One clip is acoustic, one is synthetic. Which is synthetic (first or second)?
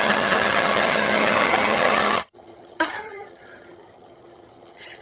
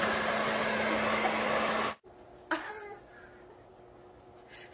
first